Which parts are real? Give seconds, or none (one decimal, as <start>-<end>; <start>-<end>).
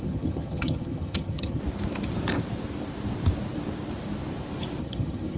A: 1.6-4.8